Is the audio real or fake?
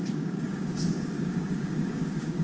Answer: fake